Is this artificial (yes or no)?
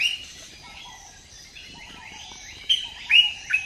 yes